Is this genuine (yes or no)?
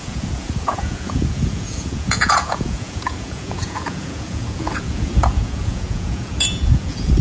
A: no